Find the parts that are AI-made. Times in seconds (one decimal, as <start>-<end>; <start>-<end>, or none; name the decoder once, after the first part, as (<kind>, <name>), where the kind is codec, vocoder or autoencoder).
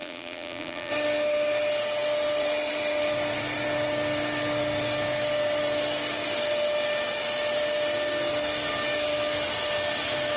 0.0-0.9 (vocoder, BigVGAN v2)